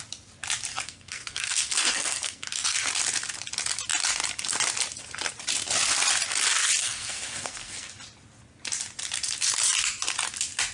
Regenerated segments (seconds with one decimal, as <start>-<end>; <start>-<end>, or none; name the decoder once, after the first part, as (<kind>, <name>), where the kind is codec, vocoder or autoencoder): 0.7-2.9 (codec, SNAC); 6.8-7.9